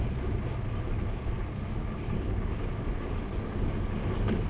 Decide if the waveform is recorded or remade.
recorded